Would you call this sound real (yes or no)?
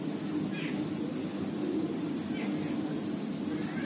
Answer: yes